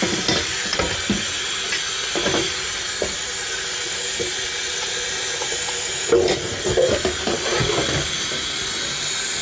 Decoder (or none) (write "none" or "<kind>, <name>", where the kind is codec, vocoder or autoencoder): none